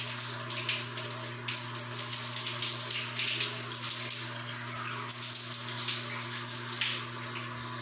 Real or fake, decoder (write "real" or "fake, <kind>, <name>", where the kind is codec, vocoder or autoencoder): real